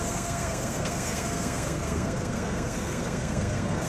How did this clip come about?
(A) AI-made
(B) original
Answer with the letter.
A